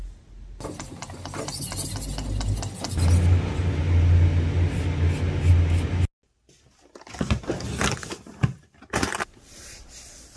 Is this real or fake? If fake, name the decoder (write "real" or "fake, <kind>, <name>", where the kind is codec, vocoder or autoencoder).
real